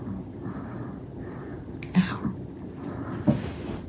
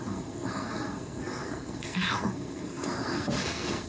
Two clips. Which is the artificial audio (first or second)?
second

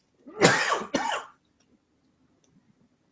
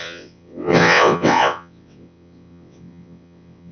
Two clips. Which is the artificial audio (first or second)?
second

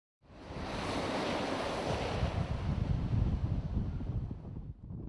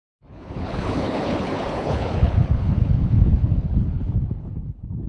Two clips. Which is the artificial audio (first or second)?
second